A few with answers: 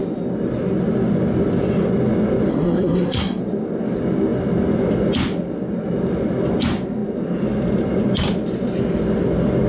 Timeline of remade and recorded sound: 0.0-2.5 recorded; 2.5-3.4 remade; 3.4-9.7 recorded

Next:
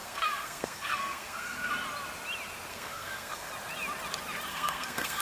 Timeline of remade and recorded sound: 0.0-1.7 remade; 1.7-2.7 recorded; 2.7-3.5 remade; 3.5-4.5 recorded; 4.5-5.2 remade